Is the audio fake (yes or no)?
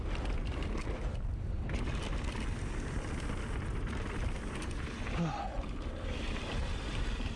no